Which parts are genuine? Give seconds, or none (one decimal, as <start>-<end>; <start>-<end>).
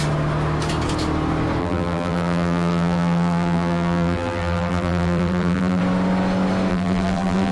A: 0.0-1.6; 5.8-6.7